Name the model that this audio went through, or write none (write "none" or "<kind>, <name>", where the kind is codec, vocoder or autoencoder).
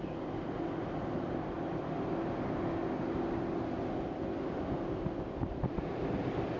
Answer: none